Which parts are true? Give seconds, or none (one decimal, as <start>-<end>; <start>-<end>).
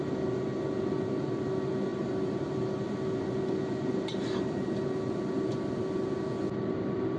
0.0-7.2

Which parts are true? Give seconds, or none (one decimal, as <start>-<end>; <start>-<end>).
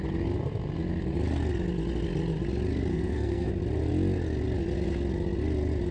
0.0-2.9; 3.5-5.9